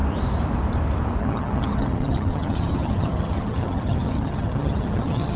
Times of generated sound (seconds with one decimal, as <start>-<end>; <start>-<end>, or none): 1.2-5.4